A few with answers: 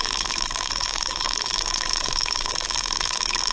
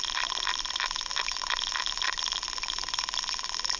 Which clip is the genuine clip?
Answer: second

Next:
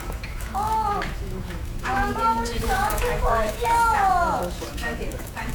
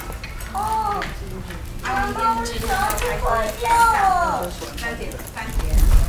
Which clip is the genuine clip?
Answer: second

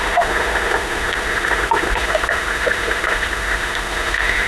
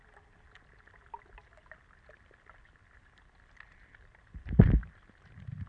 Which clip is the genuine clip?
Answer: second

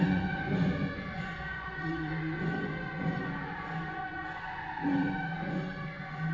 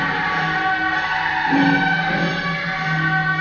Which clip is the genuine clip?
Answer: second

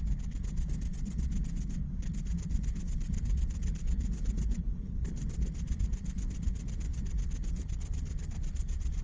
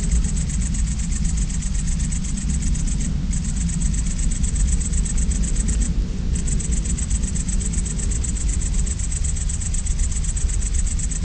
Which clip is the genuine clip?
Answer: second